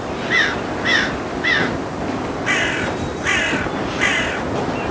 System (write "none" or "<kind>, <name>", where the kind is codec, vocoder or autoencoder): none